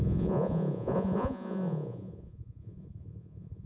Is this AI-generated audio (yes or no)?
yes